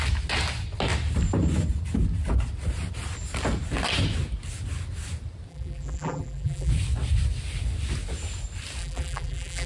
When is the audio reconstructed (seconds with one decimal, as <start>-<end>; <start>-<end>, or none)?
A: 5.5-6.7; 8.8-9.7